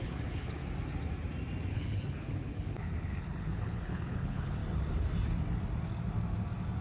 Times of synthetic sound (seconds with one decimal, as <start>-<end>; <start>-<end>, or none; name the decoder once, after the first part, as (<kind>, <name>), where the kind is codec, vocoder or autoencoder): 0.0-0.6 (codec, HILCodec); 1.7-4.6

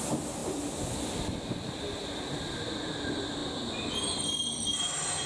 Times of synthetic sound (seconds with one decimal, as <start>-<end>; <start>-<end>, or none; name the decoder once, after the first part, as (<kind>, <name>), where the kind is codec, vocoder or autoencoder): none

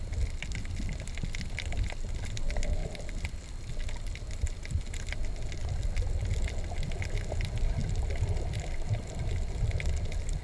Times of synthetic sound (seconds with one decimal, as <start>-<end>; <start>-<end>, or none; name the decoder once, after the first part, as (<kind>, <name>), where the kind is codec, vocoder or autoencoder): none